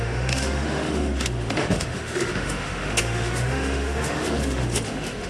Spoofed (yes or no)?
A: yes